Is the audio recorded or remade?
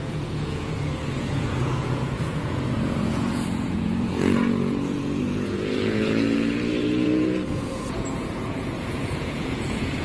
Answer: remade